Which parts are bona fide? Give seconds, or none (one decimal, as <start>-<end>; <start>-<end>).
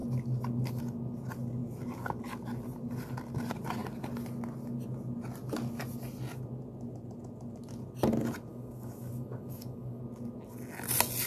0.0-8.5; 10.0-11.3